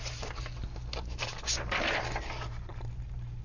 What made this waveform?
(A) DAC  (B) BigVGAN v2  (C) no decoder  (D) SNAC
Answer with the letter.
C